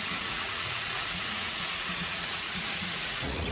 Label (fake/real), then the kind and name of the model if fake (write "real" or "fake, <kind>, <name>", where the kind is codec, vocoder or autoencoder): fake, vocoder, Vocos